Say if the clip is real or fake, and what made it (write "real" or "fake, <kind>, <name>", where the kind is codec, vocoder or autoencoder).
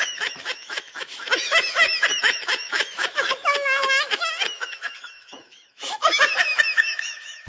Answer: fake, autoencoder, DAC-VAE